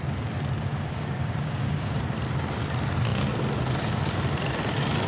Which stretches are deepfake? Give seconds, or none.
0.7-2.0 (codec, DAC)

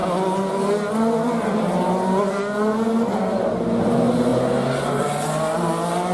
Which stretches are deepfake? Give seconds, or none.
none

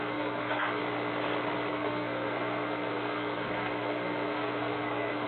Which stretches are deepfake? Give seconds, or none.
0.0-0.8 (codec, SNAC); 1.7-5.3

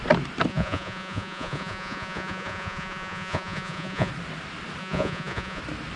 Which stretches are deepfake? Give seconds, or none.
0.5-4.1 (vocoder, Vocos); 4.8-5.6

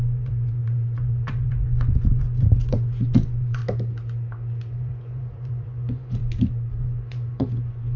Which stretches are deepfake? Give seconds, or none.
0.0-3.6 (vocoder, Vocos); 4.7-6.2; 6.8-8.0

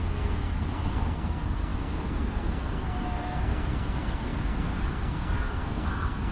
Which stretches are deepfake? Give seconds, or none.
0.0-6.3 (codec, SNAC)

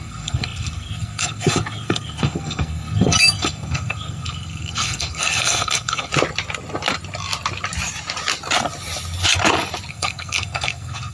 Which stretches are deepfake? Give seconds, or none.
0.0-6.1 (codec, SNAC); 9.9-11.1